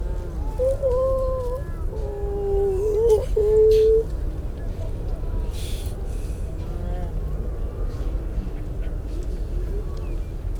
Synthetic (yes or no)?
no